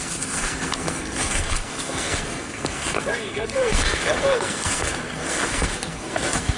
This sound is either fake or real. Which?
fake